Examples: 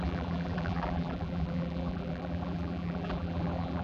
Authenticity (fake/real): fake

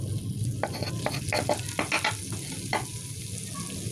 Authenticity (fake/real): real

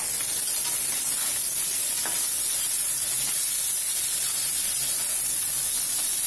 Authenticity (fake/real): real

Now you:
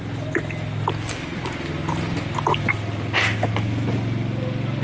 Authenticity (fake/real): real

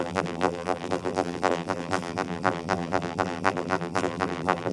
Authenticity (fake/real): fake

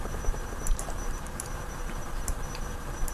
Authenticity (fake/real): fake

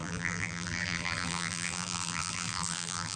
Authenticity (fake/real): fake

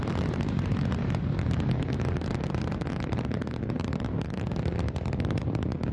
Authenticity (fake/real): fake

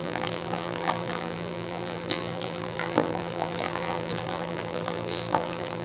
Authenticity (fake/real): fake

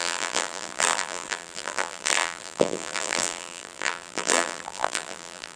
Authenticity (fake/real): fake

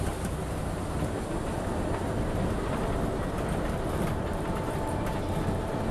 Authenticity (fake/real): real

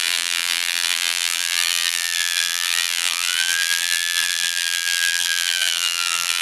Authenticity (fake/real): fake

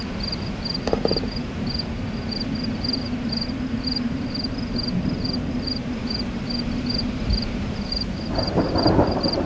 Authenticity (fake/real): fake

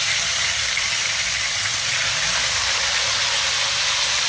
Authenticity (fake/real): fake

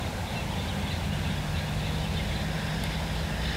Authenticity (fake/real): real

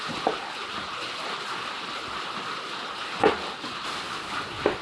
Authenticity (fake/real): real